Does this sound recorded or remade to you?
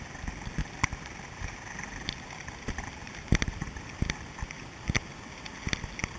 recorded